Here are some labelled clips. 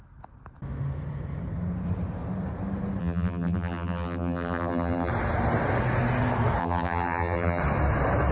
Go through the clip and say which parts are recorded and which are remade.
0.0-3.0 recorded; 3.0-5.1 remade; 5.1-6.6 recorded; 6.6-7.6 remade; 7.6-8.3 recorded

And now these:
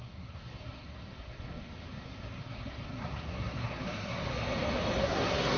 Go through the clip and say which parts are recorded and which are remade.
0.0-4.3 remade; 4.3-5.0 recorded; 5.0-5.6 remade

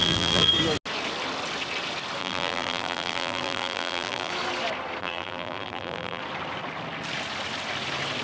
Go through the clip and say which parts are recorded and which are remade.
0.0-0.5 remade; 0.5-2.2 recorded; 2.2-4.3 remade; 4.3-5.0 recorded; 5.0-6.2 remade; 6.2-8.2 recorded

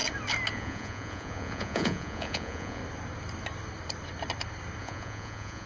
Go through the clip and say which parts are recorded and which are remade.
0.0-0.5 recorded; 0.5-2.8 remade; 2.8-4.8 recorded; 4.8-5.7 remade

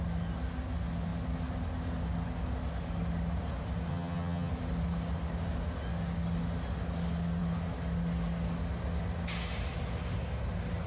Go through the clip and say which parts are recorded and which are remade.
0.0-3.9 recorded; 3.9-4.5 remade; 4.5-10.9 recorded

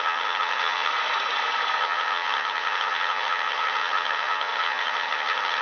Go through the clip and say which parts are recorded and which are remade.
0.0-0.9 remade; 0.9-1.8 recorded; 1.8-5.6 remade